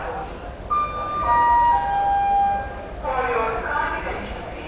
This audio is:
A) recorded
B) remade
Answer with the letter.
A